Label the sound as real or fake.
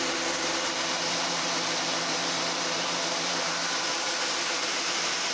fake